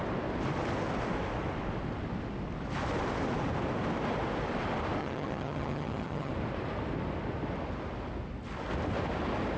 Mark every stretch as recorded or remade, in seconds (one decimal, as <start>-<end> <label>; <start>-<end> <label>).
0.0-5.0 recorded; 5.0-6.3 remade; 6.3-9.6 recorded